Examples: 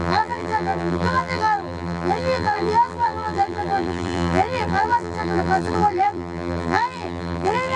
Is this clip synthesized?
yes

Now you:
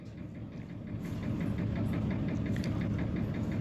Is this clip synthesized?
no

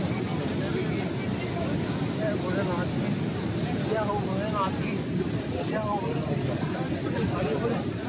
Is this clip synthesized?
no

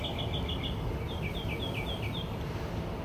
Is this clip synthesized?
no